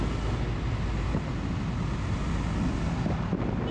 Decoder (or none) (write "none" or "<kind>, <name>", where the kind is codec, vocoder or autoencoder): none